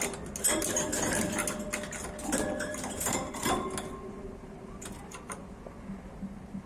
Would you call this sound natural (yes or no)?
yes